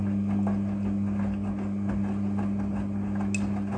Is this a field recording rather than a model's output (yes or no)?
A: yes